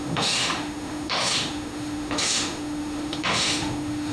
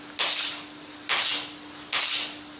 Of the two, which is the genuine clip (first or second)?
second